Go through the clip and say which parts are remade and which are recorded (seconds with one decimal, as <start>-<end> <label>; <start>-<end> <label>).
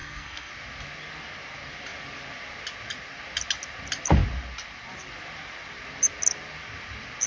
0.0-0.5 remade; 0.5-7.3 recorded